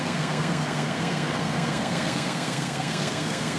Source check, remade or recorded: remade